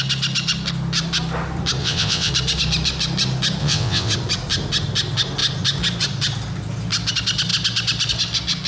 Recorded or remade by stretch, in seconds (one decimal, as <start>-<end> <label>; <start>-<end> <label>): 0.0-1.8 recorded; 1.8-2.3 remade; 2.3-3.6 recorded; 3.6-4.1 remade; 4.1-8.7 recorded